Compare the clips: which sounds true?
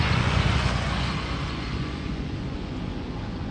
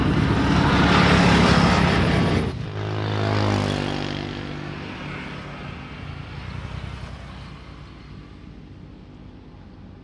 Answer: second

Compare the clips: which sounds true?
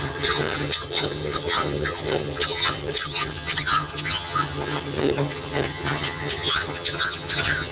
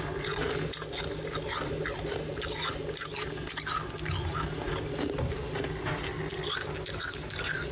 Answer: second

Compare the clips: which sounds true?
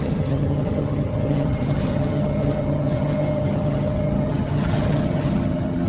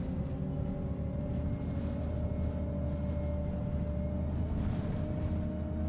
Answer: second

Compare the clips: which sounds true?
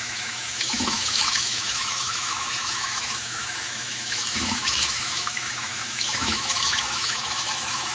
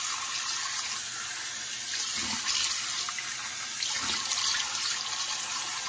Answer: second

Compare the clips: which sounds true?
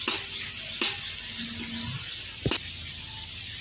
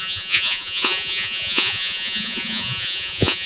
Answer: first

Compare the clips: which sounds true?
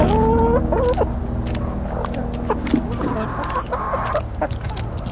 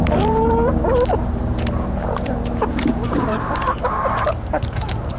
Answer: first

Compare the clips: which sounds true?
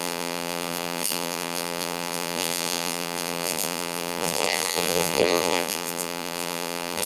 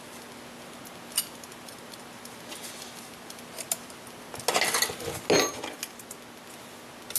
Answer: second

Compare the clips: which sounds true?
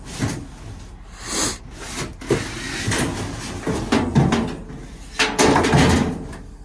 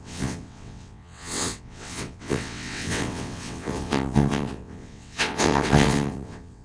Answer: first